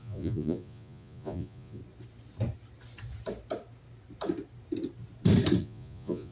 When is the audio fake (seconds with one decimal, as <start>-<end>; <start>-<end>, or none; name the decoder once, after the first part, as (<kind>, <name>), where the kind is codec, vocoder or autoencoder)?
0.0-1.8 (vocoder, Vocos); 5.6-6.3